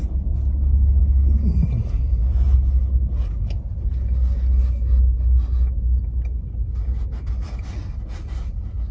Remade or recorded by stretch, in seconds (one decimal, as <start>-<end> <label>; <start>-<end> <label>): 0.0-8.9 recorded